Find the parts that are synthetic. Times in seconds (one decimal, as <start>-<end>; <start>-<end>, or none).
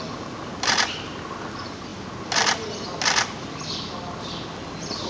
none